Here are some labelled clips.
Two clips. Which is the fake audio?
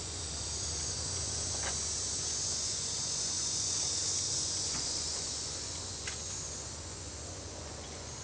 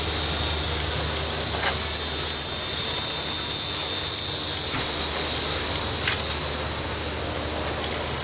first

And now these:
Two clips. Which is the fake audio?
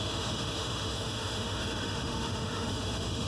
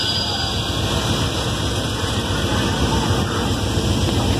first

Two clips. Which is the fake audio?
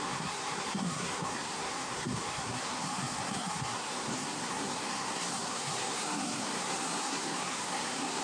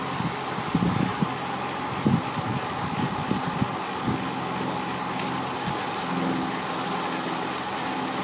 first